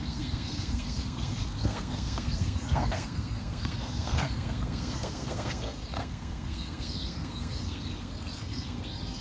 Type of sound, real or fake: fake